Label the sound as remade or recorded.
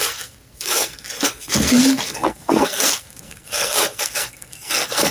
remade